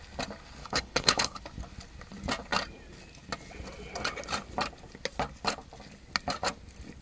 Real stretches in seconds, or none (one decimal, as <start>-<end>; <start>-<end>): 0.0-0.6; 1.4-7.0